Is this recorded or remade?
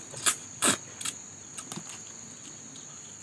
recorded